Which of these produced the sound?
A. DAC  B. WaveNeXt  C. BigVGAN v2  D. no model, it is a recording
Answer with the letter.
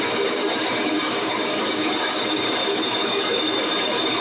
A